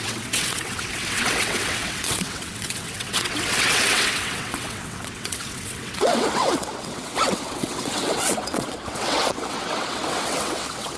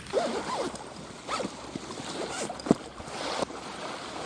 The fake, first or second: first